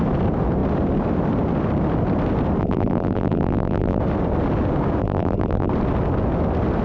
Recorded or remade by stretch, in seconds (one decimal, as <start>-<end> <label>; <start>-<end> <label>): 0.0-2.6 recorded; 2.6-4.0 remade; 4.0-5.0 recorded; 5.0-5.7 remade; 5.7-6.8 recorded